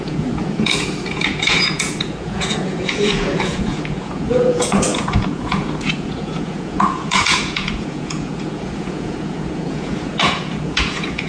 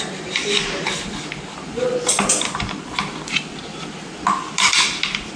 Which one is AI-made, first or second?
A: first